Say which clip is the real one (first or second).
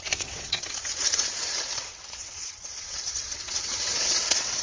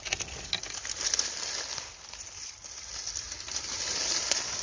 second